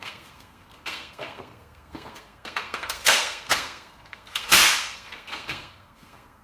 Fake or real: fake